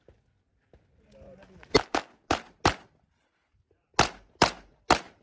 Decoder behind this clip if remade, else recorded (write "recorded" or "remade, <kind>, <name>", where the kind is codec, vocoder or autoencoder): recorded